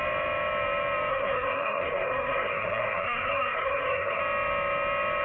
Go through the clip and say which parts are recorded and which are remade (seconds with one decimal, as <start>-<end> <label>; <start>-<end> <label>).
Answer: 0.0-1.1 recorded; 1.1-4.2 remade; 4.2-5.2 recorded